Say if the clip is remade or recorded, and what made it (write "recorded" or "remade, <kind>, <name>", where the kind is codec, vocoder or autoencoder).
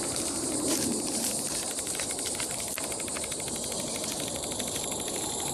remade, vocoder, BigVGAN v2